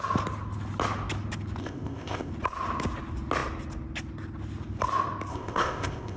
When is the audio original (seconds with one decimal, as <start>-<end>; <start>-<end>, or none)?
0.0-1.6; 2.3-5.3

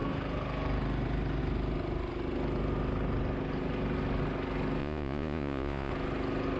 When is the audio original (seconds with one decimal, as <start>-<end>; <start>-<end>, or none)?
0.0-4.8; 5.9-6.6